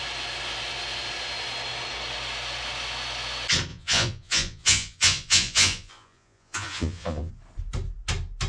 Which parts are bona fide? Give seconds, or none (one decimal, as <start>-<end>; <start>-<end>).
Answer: 0.0-3.7; 7.3-8.5